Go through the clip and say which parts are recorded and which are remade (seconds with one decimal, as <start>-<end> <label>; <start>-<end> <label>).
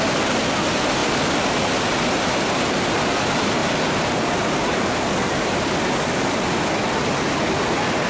0.0-8.1 recorded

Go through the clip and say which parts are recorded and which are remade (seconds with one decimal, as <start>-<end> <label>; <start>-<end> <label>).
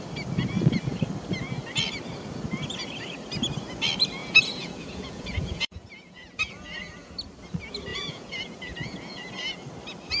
0.0-4.2 recorded; 4.2-7.1 remade; 7.1-7.9 recorded; 7.9-9.3 remade; 9.3-10.2 recorded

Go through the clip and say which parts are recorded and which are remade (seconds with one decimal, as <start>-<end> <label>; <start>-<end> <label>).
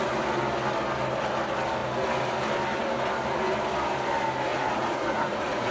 0.0-4.5 recorded; 4.5-5.7 remade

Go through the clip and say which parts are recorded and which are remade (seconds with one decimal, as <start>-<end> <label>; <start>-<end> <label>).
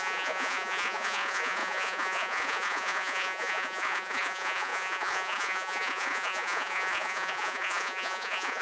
0.0-8.6 remade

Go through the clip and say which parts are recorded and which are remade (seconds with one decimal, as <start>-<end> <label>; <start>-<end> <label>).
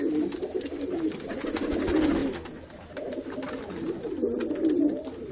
0.0-5.3 recorded